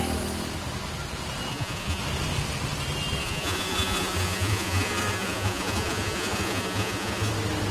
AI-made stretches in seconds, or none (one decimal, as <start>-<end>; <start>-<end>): 1.5-2.0; 3.2-7.3